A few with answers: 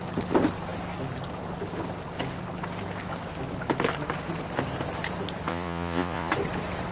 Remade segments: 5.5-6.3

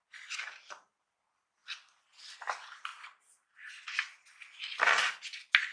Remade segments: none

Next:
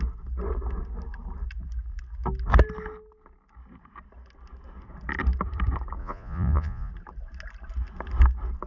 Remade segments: 6.0-6.9